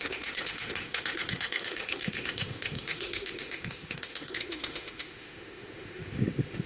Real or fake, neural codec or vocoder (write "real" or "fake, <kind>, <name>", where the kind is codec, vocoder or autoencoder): fake, autoencoder, DAC-VAE